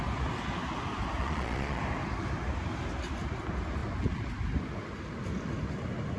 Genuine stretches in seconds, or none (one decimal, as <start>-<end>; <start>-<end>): 0.0-1.2; 1.8-6.2

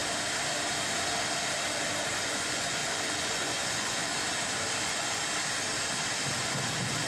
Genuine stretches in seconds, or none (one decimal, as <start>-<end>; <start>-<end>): 0.0-2.1; 4.1-4.8; 5.2-6.4

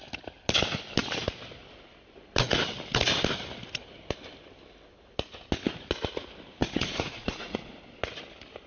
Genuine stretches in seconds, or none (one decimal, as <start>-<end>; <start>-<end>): 0.0-6.6; 7.7-8.7

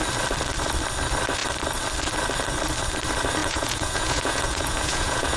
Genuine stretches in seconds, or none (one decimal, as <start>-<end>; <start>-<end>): 0.0-3.4

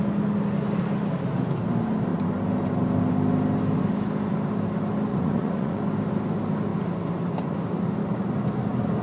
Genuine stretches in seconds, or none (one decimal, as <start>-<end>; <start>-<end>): 0.0-5.1; 5.8-9.0

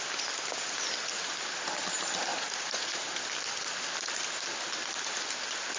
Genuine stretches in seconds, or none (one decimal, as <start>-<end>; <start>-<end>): 0.0-2.3; 3.2-5.8